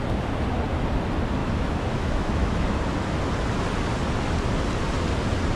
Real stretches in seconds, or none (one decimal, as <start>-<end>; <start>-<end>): 0.0-1.4; 2.8-5.6